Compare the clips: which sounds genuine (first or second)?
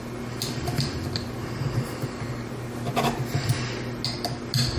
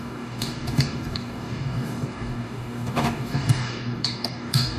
first